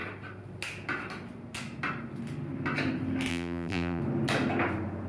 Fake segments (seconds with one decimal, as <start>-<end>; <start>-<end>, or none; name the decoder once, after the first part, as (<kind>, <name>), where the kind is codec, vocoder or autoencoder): 3.3-4.0 (vocoder, BigVGAN v2)